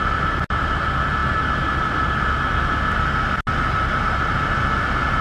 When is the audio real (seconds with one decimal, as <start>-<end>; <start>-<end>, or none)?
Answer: 0.0-5.2

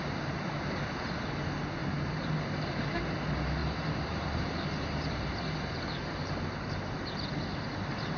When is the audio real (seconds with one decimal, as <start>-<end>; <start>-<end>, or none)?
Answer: 0.0-1.8; 3.0-3.6; 6.7-8.2

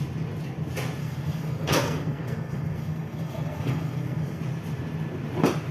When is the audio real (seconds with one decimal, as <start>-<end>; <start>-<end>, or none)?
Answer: 0.0-1.0; 4.4-5.7

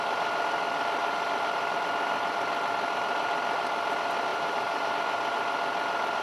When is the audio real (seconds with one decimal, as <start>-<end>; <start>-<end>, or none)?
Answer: 0.0-4.3; 4.9-6.2

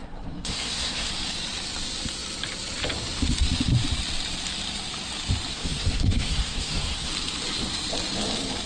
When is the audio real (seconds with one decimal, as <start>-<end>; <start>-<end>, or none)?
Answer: 1.1-5.5; 7.1-8.7

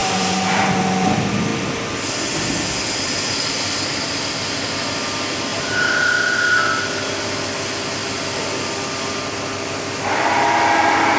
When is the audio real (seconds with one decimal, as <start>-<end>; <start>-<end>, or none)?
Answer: 0.7-5.5; 6.6-11.2

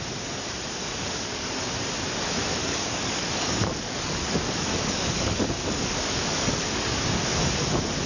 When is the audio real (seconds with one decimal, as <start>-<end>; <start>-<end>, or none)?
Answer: 0.0-0.8; 1.5-2.6; 7.2-8.1